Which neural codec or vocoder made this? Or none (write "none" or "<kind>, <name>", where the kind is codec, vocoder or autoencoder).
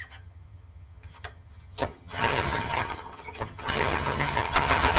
vocoder, HiFi-GAN